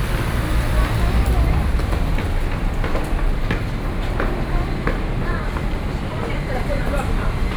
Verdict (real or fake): fake